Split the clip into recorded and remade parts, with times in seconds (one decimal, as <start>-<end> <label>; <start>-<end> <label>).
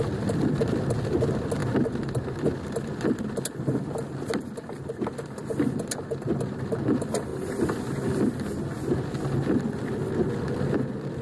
0.0-11.2 recorded